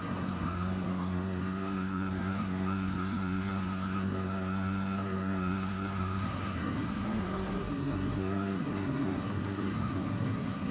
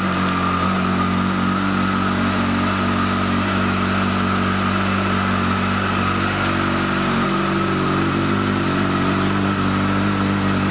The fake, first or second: first